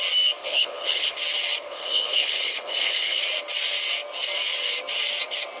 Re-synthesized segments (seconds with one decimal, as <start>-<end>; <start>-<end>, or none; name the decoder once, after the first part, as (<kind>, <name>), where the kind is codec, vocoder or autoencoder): 0.4-1.2 (codec, HILCodec); 1.6-3.2